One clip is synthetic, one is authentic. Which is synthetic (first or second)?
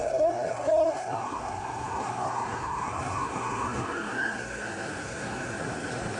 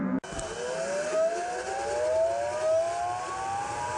first